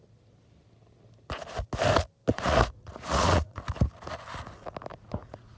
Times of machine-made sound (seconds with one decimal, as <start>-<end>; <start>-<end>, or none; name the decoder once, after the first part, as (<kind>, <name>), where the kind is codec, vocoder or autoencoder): 2.3-3.6 (vocoder, Vocos); 4.9-5.6